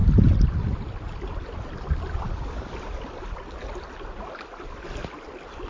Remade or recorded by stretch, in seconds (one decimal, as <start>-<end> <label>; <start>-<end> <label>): 0.0-5.7 recorded